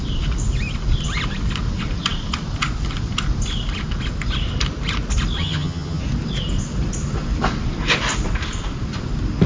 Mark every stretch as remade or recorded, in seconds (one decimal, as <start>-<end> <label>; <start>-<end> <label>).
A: 0.0-5.4 recorded; 5.4-6.0 remade; 6.0-9.5 recorded